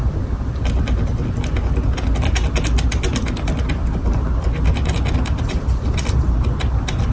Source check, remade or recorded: recorded